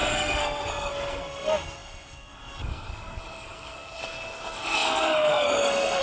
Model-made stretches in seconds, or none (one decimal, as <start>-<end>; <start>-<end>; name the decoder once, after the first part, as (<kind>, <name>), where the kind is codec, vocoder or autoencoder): 0.0-6.0 (codec, SNAC)